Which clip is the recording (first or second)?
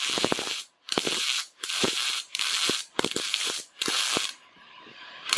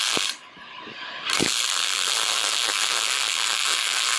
second